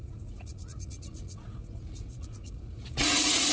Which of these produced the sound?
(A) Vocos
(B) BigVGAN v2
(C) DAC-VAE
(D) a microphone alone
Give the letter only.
A